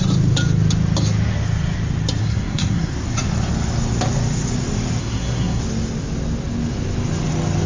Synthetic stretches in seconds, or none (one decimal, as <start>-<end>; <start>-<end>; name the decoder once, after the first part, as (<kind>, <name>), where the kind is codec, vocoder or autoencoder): 2.2-2.9 (codec, SNAC); 5.0-5.6